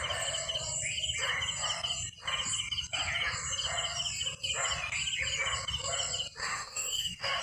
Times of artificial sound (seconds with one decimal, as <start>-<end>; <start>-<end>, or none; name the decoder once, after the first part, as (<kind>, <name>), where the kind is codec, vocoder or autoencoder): 6.4-7.4 (autoencoder, DAC-VAE)